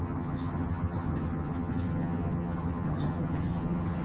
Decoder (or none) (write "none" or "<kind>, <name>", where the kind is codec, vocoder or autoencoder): vocoder, HiFi-GAN